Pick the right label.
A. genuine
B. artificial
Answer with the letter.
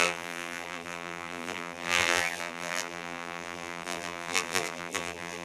B